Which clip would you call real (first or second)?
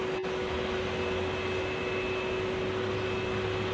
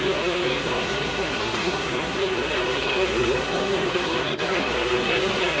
first